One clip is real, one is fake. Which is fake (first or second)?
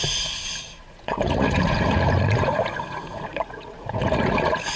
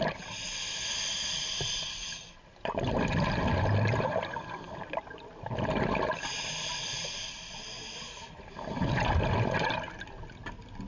first